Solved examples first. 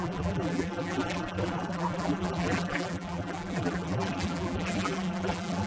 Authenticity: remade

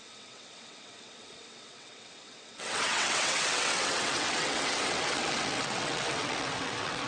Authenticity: remade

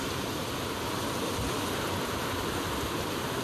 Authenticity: recorded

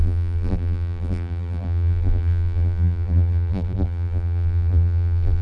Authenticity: remade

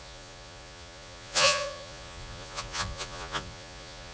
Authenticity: remade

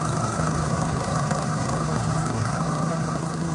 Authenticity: remade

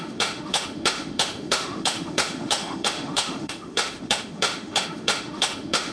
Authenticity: remade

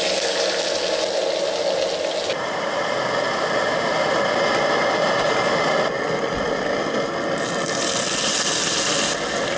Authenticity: recorded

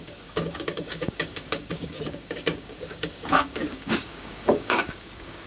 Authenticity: remade